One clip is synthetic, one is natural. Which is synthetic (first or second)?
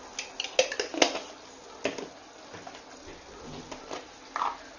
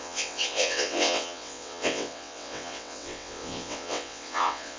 second